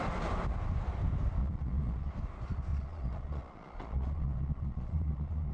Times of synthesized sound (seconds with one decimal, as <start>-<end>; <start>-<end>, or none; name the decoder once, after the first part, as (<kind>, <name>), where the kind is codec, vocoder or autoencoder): 1.4-2.1 (vocoder, Vocos); 2.7-5.5